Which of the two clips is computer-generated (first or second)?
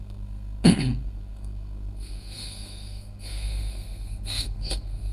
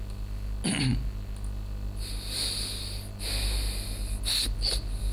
first